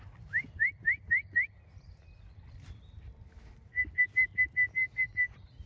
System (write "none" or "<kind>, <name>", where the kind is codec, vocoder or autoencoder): none